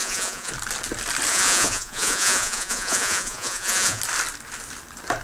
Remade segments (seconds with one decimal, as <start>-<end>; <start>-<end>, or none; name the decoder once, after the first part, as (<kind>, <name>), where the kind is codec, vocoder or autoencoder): 0.0-0.5 (vocoder, Vocos); 1.3-4.0